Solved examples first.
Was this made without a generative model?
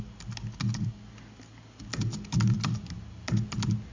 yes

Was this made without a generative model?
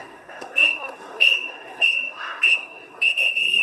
no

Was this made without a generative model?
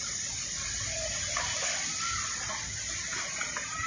yes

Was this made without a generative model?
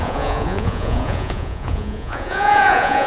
no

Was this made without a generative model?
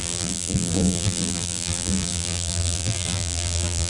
no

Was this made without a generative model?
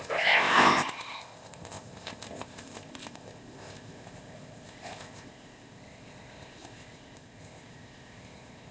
no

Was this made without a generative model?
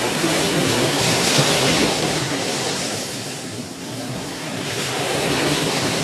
no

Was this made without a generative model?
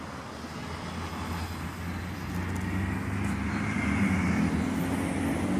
yes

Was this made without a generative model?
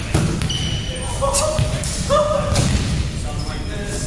yes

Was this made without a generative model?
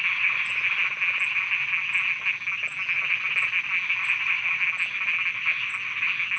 yes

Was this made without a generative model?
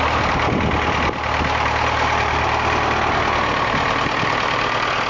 yes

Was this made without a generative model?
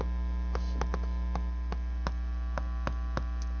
yes